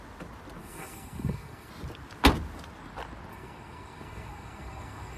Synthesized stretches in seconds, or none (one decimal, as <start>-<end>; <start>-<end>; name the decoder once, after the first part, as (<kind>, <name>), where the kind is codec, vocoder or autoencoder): 0.6-1.7 (codec, SNAC); 3.3-5.2